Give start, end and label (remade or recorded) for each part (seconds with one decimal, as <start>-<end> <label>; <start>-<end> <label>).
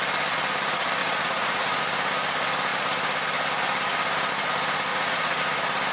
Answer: 0.0-1.0 recorded; 1.0-1.8 remade; 1.8-4.9 recorded; 4.9-5.4 remade; 5.4-5.9 recorded